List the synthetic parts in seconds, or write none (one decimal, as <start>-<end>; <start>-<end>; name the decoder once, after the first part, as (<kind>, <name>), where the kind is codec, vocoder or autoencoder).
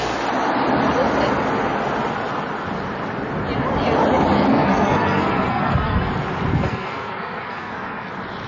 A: 4.5-6.1 (codec, SNAC); 6.5-8.1